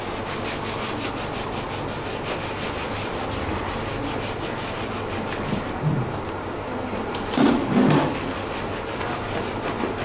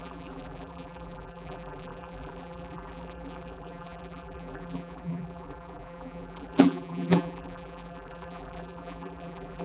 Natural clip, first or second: first